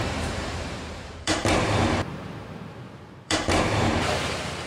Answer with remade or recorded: remade